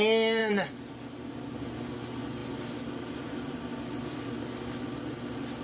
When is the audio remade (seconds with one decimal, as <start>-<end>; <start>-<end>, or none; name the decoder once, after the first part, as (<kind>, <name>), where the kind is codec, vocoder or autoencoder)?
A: 0.4-1.6 (vocoder, BigVGAN v2); 2.4-4.3